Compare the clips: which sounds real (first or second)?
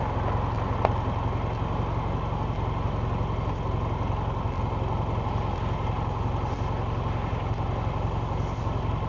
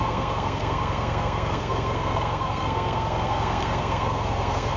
first